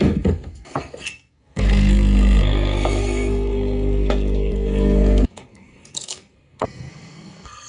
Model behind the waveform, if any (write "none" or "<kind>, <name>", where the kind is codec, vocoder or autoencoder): codec, SNAC